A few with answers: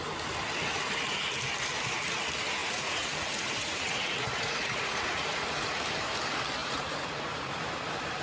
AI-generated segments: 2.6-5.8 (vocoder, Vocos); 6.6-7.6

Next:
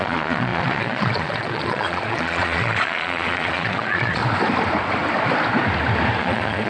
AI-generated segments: 0.0-4.2 (vocoder, Vocos); 6.2-6.7

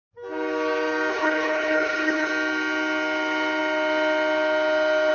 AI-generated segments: 1.1-2.3 (codec, HILCodec)

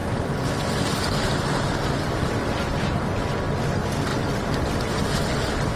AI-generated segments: 0.0-0.5 (vocoder, BigVGAN v2)